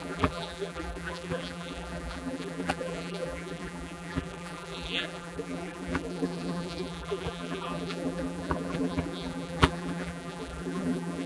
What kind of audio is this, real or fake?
fake